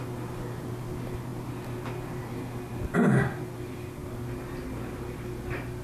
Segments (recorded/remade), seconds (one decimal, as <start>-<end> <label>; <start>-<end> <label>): 0.0-5.8 recorded